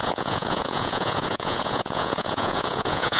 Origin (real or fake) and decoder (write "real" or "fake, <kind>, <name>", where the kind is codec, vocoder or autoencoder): fake, vocoder, Vocos